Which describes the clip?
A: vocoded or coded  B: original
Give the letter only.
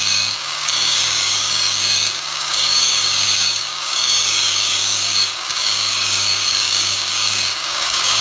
A